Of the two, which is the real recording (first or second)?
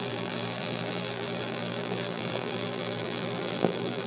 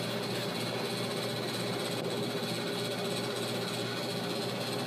second